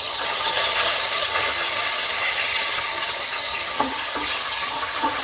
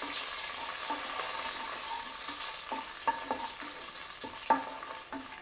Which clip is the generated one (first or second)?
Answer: first